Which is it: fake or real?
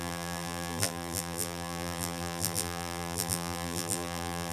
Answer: fake